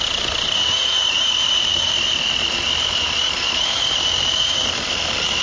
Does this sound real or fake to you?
fake